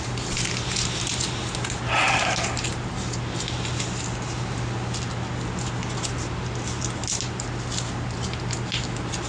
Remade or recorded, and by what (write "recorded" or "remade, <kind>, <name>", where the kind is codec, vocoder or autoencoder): recorded